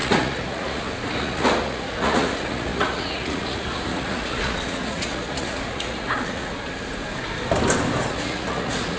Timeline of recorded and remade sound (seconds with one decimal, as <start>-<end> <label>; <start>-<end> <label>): 0.0-7.0 remade; 7.0-8.1 recorded; 8.1-9.0 remade